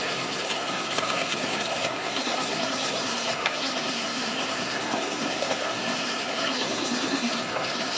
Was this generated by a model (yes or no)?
yes